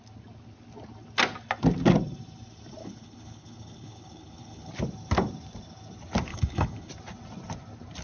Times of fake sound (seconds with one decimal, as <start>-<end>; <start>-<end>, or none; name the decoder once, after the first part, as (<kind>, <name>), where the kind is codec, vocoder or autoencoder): 2.8-4.7 (codec, HILCodec); 6.3-6.9

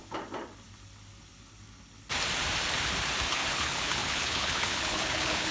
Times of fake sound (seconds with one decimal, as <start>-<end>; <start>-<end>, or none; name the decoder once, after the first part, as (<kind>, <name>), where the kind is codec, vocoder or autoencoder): 3.3-5.5 (codec, HILCodec)

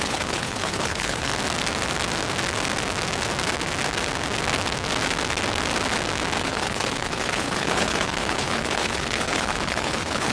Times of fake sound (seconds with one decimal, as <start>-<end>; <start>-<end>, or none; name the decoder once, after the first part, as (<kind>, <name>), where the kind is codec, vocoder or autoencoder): 0.0-1.3 (codec, HILCodec); 6.4-10.3

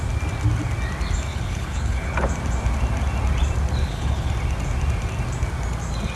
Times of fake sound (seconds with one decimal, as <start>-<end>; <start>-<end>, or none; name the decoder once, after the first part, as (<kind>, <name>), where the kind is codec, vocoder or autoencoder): 1.3-2.3 (codec, HILCodec); 3.8-4.3

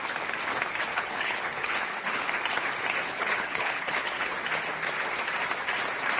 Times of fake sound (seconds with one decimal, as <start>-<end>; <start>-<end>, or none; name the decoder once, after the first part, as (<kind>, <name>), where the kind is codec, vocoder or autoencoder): 0.9-2.3 (codec, HILCodec); 3.0-4.3

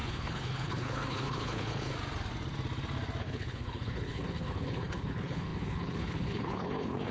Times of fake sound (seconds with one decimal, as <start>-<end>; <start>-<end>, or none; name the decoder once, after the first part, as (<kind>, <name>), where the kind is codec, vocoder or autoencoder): 0.0-1.9 (codec, HILCodec); 3.2-7.1

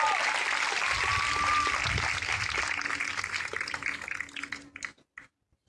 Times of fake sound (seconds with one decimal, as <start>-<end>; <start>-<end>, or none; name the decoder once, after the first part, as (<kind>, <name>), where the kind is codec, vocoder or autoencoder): none